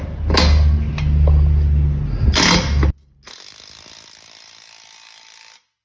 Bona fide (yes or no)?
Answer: yes